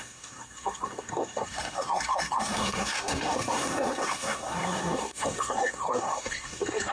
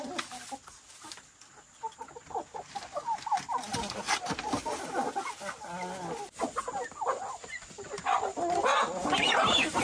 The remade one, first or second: first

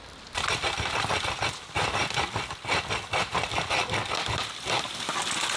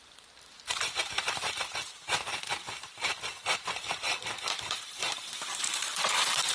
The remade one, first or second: second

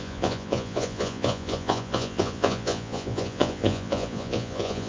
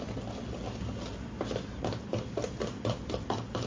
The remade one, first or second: first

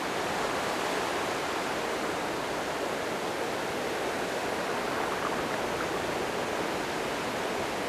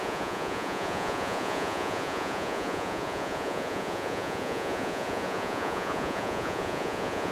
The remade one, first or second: second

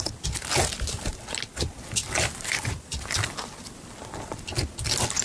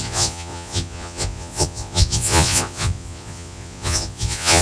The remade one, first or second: second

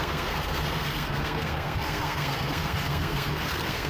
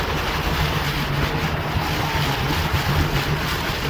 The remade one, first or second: first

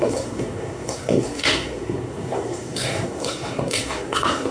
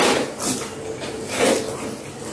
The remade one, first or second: first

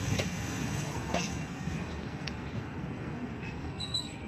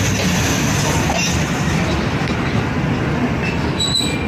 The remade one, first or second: first